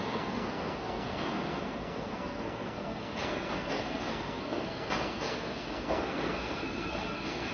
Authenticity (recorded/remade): remade